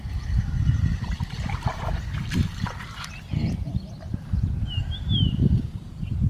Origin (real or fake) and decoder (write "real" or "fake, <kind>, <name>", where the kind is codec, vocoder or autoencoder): fake, vocoder, BigVGAN v2